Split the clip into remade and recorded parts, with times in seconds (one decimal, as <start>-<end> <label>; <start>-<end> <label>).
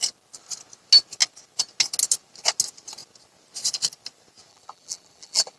0.0-4.5 recorded; 4.5-5.6 remade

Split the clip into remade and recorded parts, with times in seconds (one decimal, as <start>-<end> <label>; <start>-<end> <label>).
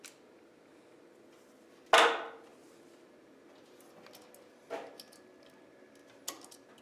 0.0-6.8 recorded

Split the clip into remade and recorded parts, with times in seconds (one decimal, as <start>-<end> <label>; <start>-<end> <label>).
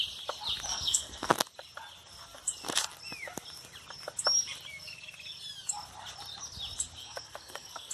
0.0-0.7 recorded; 0.7-1.3 remade; 1.3-7.0 recorded; 7.0-7.9 remade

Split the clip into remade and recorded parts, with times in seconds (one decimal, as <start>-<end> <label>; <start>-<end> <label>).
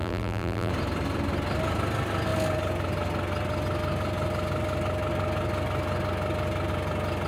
0.0-0.7 remade; 0.7-7.3 recorded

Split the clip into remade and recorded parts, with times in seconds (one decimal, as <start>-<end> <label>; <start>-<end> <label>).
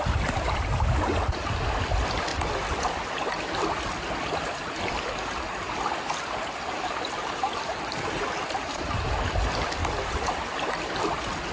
0.0-7.2 recorded; 7.2-8.8 remade; 8.8-9.8 recorded; 9.8-10.3 remade; 10.3-11.5 recorded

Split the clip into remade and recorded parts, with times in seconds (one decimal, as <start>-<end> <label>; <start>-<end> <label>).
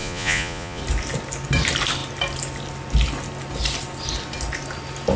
0.0-0.8 remade; 0.8-5.2 recorded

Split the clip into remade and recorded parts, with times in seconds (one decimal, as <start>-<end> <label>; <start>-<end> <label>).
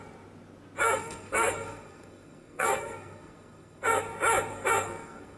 0.0-0.8 recorded; 0.8-4.0 remade; 4.0-4.5 recorded; 4.5-5.4 remade